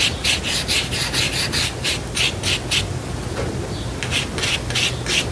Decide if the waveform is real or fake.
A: real